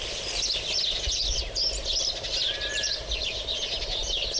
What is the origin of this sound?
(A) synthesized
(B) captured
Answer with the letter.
B